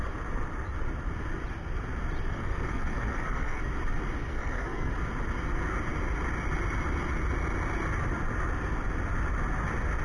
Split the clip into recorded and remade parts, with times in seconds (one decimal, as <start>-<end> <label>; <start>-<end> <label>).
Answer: 0.0-2.3 recorded; 2.3-3.6 remade; 3.6-4.3 recorded; 4.3-4.9 remade; 4.9-10.0 recorded